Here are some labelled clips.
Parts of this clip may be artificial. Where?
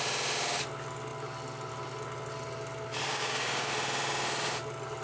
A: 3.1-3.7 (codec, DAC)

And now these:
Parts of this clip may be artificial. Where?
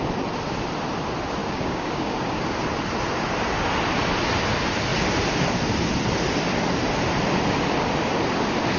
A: 1.4-2.4 (codec, DAC)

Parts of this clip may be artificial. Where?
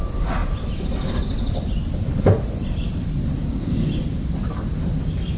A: 3.4-3.9 (codec, DAC)